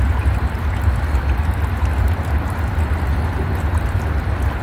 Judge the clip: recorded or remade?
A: recorded